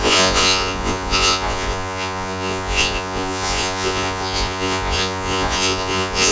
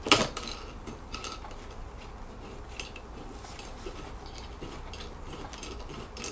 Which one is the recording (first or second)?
second